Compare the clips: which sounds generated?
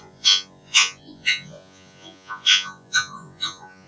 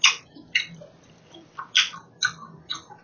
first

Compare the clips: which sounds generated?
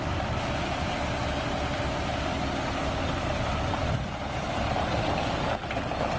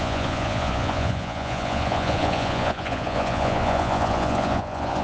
second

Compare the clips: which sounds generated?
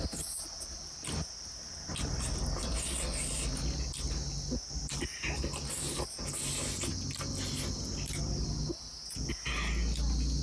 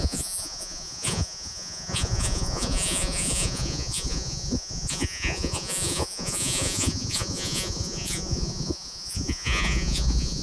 second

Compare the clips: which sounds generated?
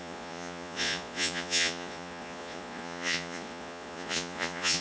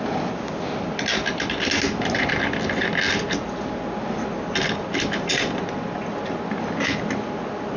first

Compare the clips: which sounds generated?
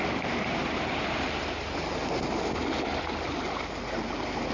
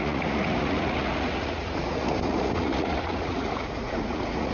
second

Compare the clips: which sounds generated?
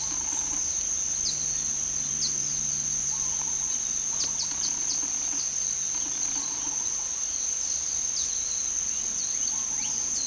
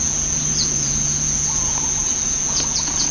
second